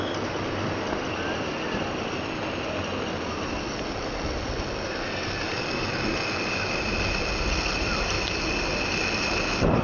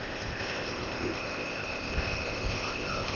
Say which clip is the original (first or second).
first